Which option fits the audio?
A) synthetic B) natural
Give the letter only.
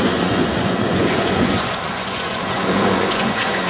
A